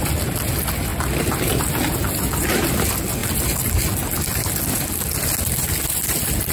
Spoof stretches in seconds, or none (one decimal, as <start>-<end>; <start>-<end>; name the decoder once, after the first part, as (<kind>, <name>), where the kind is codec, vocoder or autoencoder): 0.9-1.6 (vocoder, BigVGAN v2)